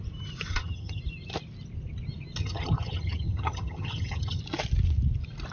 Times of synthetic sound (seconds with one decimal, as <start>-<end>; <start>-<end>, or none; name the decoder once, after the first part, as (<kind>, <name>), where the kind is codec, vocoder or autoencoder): 0.5-1.0 (vocoder, HiFi-GAN); 2.4-4.4